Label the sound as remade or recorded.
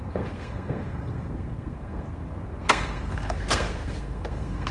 remade